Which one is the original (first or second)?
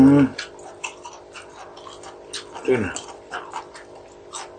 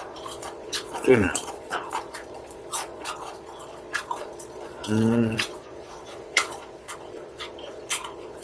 first